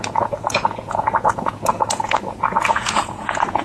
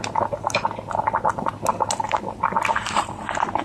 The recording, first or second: second